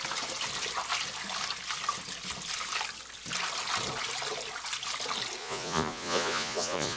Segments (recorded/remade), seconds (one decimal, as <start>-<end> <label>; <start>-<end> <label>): 0.0-5.4 recorded; 5.4-7.0 remade